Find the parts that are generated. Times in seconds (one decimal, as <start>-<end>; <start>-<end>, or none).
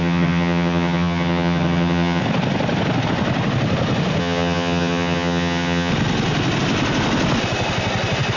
0.0-2.2; 4.2-5.9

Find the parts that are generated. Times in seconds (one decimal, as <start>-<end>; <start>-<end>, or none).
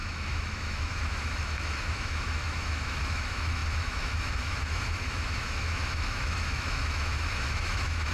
0.0-8.1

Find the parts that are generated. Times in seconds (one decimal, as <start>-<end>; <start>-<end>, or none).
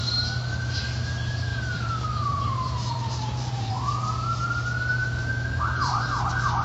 0.0-0.8; 1.5-3.7; 5.0-6.0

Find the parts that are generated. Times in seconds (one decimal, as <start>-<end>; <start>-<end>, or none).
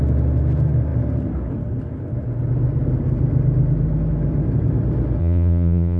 5.2-6.0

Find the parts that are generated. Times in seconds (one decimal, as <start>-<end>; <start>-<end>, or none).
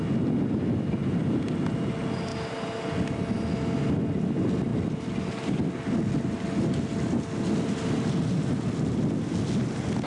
none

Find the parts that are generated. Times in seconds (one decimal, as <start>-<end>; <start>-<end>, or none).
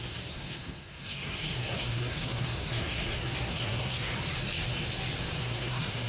0.0-4.1; 5.4-6.1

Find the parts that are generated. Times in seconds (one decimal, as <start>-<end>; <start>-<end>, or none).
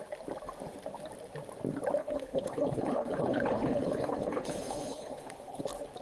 2.0-5.6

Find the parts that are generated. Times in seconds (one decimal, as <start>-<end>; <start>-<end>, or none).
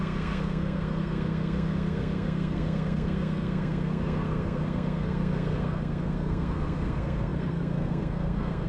0.0-8.7